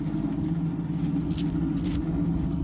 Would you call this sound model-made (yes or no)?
no